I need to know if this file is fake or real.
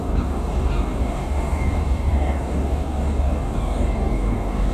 fake